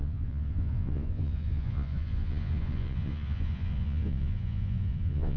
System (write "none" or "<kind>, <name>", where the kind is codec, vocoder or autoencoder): vocoder, Vocos